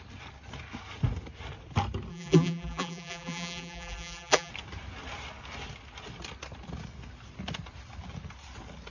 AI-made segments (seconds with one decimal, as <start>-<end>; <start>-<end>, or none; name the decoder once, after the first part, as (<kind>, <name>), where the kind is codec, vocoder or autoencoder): 2.1-4.5 (vocoder, BigVGAN v2)